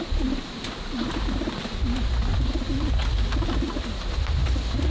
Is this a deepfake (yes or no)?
no